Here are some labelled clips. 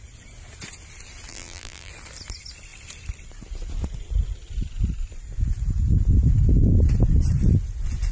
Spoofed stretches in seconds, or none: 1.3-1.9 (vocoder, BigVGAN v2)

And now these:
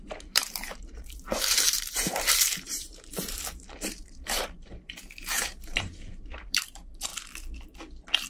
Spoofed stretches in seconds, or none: 0.0-7.1 (vocoder, BigVGAN v2)

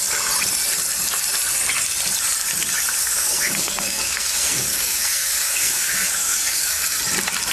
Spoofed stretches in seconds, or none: 3.0-7.0 (codec, SNAC)

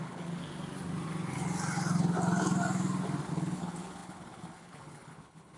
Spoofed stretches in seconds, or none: 0.0-0.4 (codec, HILCodec); 3.3-5.6

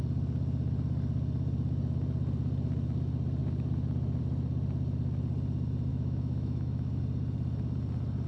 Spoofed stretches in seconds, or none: 5.9-7.0 (autoencoder, DAC-VAE)

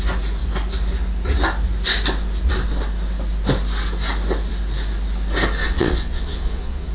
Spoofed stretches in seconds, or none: 5.6-6.9 (vocoder, Vocos)

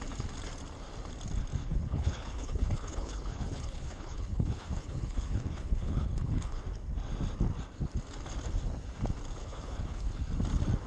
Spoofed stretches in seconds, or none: 1.6-6.6 (codec, HILCodec); 9.4-10.2